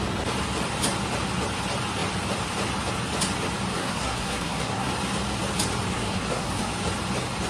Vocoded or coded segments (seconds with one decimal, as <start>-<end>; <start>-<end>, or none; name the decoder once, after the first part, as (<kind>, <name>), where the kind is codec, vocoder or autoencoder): 3.7-4.9 (codec, SNAC); 5.9-6.7